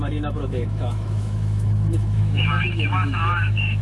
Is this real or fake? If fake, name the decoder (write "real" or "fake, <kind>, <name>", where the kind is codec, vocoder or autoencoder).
fake, autoencoder, DAC-VAE